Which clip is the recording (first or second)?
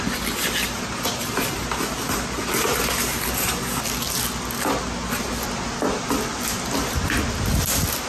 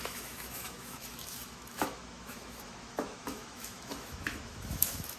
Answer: first